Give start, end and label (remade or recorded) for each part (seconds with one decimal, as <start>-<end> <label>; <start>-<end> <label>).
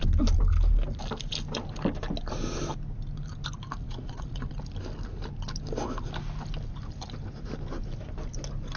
0.0-3.8 recorded; 3.8-4.5 remade; 4.5-8.8 recorded